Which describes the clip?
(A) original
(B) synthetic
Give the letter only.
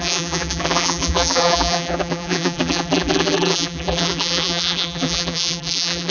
B